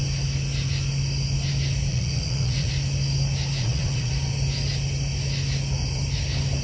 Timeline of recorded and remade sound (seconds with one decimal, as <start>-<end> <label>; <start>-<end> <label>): 0.0-1.9 recorded; 1.9-2.7 remade; 2.7-3.6 recorded; 3.6-4.1 remade; 4.1-6.6 recorded